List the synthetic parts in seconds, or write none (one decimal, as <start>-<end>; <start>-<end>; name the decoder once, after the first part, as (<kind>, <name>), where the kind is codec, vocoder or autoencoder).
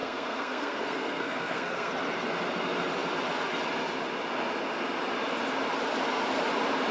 0.0-1.9 (codec, SNAC)